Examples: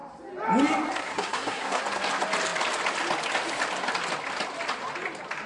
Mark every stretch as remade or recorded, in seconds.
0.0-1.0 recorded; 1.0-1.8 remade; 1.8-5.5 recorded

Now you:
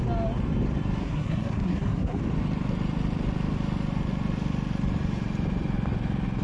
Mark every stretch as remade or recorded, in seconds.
0.0-1.0 recorded; 1.0-2.2 remade; 2.2-6.4 recorded

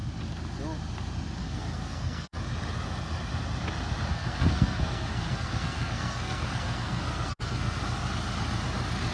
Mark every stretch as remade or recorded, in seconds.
0.0-1.4 recorded; 1.4-2.4 remade; 2.4-4.1 recorded; 4.1-7.8 remade; 7.8-9.1 recorded

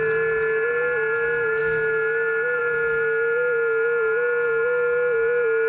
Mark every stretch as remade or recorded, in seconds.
0.0-5.7 recorded

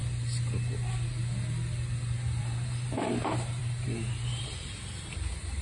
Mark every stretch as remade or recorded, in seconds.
0.0-2.4 recorded; 2.4-5.6 remade

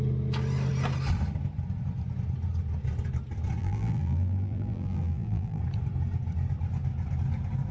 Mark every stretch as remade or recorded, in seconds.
0.0-3.6 recorded; 3.6-5.6 remade; 5.6-7.7 recorded